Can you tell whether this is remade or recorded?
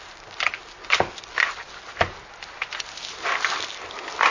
recorded